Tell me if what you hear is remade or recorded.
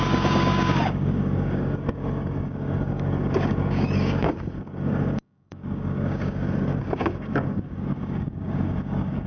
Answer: remade